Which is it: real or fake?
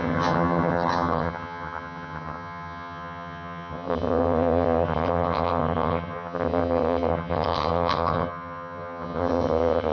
fake